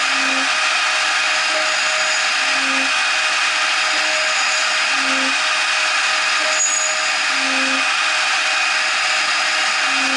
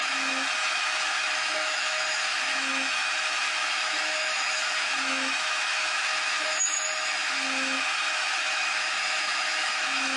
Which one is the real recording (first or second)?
first